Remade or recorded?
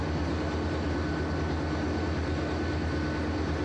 recorded